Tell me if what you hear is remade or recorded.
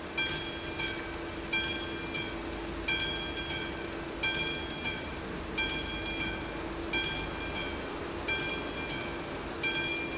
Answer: recorded